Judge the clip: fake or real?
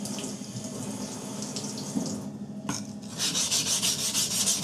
real